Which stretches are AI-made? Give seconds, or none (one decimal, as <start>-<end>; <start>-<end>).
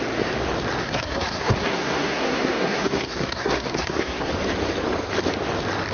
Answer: 0.8-4.3